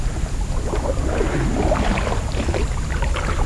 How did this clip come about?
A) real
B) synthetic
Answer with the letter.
A